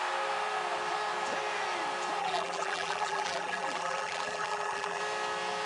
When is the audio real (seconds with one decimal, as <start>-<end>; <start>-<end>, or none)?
0.0-2.2; 5.0-5.7